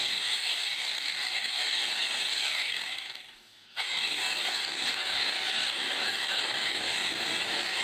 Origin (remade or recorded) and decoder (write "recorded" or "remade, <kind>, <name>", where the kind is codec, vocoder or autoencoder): remade, codec, DAC